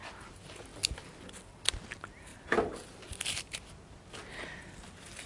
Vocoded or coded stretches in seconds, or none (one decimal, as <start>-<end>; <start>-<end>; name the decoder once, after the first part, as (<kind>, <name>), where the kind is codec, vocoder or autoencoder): none